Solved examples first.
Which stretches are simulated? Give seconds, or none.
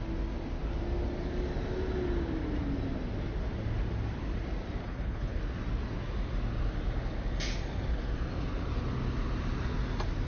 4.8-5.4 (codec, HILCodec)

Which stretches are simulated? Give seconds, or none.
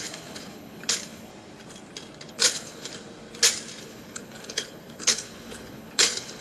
0.0-1.3 (codec, HILCodec); 2.3-2.9; 3.8-6.4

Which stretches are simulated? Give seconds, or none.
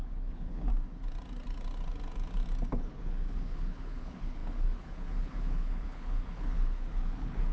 0.0-0.7 (codec, HILCodec); 2.7-7.5